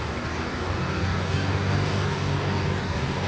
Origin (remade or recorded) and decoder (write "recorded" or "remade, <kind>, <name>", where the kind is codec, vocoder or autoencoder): remade, codec, DAC